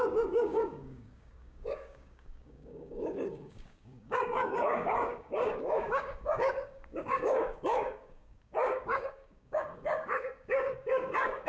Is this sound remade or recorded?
remade